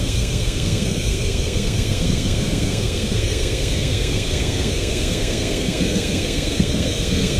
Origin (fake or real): fake